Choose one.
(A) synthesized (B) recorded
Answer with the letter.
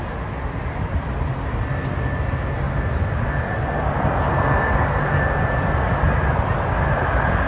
B